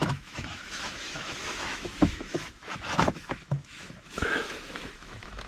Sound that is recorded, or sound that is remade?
remade